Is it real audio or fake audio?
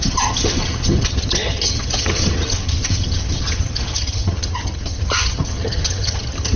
fake